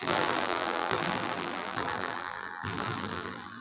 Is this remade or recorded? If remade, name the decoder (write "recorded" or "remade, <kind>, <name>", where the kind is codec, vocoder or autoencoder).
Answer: remade, vocoder, BigVGAN v2